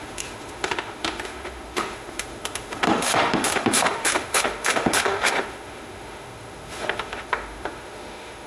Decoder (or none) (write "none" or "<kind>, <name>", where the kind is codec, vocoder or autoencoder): autoencoder, DAC-VAE